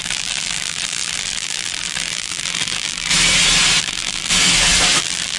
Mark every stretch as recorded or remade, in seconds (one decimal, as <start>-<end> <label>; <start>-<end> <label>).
0.0-3.1 remade; 3.1-3.8 recorded; 3.8-4.3 remade; 4.3-5.0 recorded; 5.0-5.4 remade